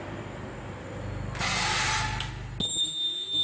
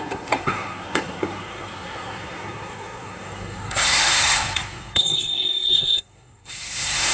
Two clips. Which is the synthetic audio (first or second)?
second